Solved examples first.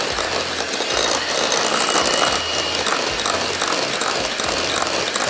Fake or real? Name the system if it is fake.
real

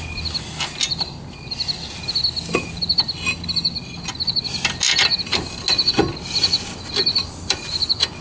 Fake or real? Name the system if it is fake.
real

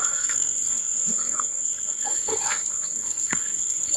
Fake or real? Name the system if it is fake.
fake, codec, SNAC